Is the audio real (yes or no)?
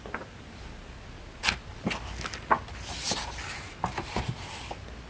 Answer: yes